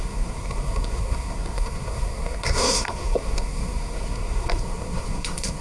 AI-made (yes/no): yes